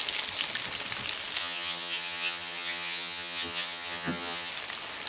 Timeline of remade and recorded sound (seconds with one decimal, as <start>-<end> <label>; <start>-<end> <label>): 0.0-1.4 recorded; 1.4-4.5 remade; 4.5-5.1 recorded